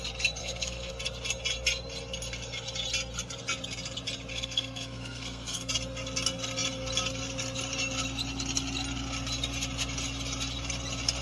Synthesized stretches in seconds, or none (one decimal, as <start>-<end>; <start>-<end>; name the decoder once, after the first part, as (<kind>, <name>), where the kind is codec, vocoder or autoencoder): 0.4-0.9 (codec, SNAC); 4.3-5.7